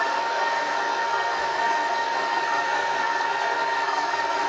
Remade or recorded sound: remade